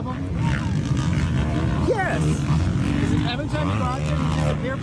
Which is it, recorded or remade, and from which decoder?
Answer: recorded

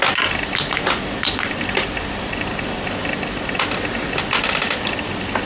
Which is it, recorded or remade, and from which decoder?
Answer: recorded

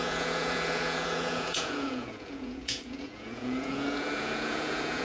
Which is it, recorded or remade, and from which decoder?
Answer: remade, vocoder, Vocos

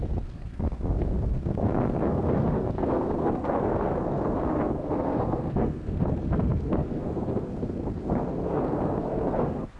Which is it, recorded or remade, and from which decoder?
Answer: remade, codec, SNAC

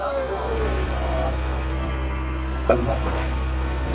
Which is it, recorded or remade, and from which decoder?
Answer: remade, codec, SNAC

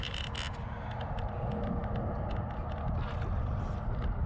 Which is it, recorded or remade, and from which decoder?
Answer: recorded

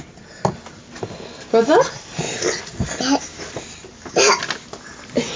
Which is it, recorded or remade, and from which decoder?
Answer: recorded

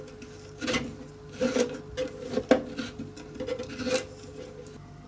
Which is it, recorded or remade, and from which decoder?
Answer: recorded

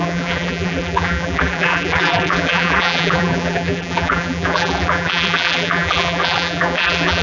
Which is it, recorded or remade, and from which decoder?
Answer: remade, vocoder, BigVGAN v2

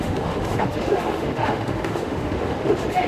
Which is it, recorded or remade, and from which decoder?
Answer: remade, autoencoder, DAC-VAE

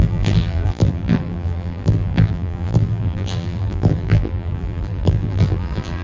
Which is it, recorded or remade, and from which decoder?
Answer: remade, vocoder, BigVGAN v2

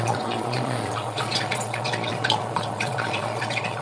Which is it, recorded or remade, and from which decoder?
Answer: remade, vocoder, Vocos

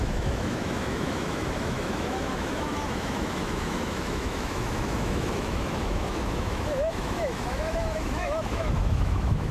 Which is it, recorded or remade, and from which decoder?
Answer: remade, autoencoder, DAC-VAE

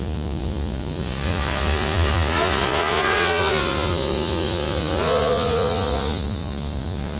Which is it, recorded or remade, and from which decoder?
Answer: remade, vocoder, Vocos